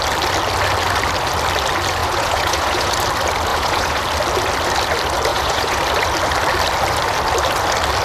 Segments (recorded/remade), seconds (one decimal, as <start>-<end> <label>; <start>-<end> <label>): 0.0-2.0 recorded; 2.0-2.9 remade; 2.9-3.5 recorded; 3.5-4.0 remade; 4.0-5.3 recorded; 5.3-5.8 remade; 5.8-8.0 recorded